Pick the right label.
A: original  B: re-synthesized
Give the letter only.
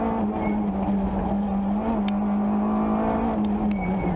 A